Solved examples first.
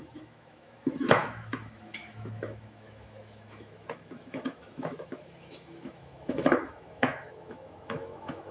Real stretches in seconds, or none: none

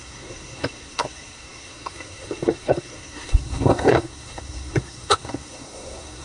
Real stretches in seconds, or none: none

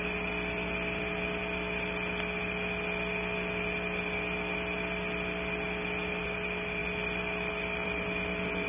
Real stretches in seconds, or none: 0.0-8.7

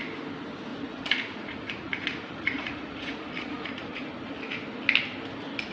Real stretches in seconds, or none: 0.0-0.7; 4.1-5.7

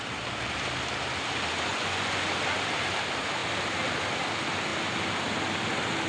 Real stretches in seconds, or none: 0.0-1.7; 2.3-6.1

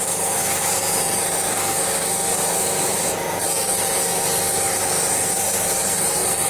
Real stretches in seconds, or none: none

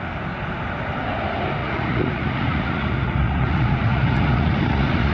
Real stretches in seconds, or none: 0.0-1.6

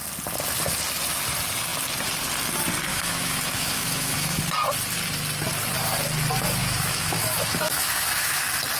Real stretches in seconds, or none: 0.0-2.9; 4.4-6.6; 8.4-8.8